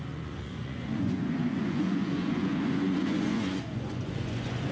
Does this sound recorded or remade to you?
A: remade